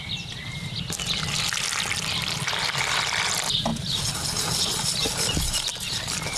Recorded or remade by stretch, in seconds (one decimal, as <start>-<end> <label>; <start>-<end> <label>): 0.0-6.4 recorded